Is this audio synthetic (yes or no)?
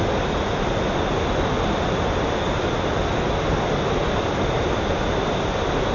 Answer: no